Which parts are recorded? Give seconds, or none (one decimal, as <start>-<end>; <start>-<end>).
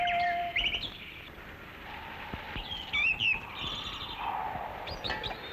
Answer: 0.0-5.5